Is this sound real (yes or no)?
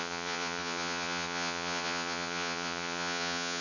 no